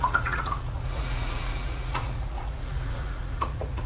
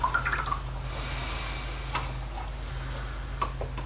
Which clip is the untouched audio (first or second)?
second